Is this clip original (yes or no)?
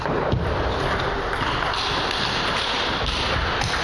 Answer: no